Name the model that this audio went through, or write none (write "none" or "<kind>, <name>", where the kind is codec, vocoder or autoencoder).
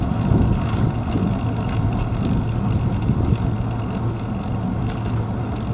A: none